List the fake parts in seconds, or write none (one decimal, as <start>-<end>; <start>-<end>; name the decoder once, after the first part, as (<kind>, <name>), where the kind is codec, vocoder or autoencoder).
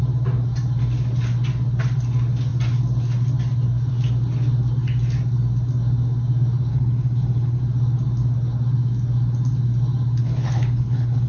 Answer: 6.7-7.6 (codec, HILCodec); 10.2-11.3